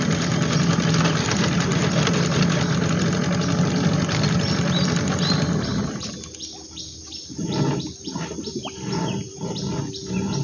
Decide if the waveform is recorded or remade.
recorded